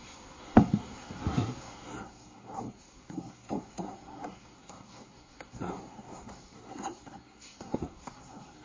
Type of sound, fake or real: fake